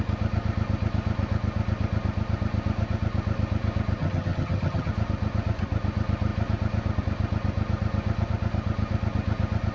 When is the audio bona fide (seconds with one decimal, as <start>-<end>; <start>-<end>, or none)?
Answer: 0.0-4.0; 4.9-9.7